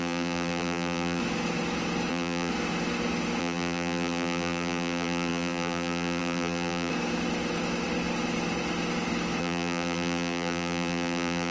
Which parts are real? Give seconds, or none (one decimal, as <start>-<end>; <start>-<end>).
1.2-2.1; 2.5-3.4; 6.9-9.4

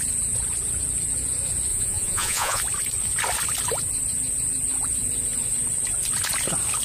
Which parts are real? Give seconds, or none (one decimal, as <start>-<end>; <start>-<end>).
0.0-1.7; 2.6-6.8

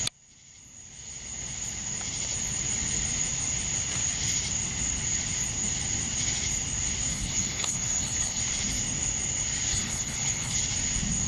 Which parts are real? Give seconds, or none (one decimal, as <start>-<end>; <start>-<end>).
0.0-7.1; 8.4-9.7; 10.6-11.3

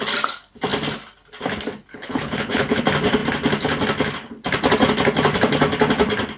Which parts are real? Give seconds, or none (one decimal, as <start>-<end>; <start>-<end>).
0.0-1.9; 2.8-6.4

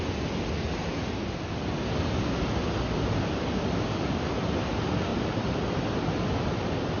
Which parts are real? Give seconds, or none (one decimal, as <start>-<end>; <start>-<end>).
0.0-7.0

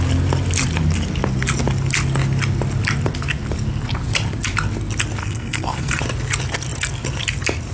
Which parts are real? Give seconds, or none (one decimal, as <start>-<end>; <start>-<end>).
0.0-5.2; 6.0-7.7